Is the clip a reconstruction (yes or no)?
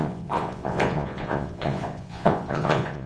yes